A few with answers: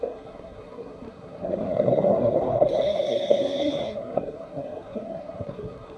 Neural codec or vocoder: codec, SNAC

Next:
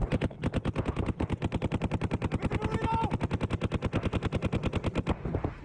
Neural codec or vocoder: none